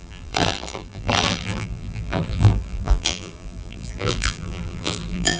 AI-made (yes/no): yes